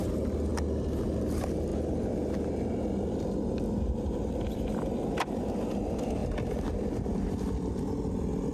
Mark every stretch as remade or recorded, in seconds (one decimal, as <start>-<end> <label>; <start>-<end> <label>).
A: 0.0-8.5 recorded